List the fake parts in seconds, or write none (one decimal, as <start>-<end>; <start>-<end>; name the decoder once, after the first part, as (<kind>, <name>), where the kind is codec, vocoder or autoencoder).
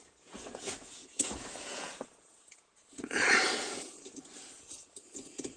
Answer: 0.0-5.6 (vocoder, Vocos)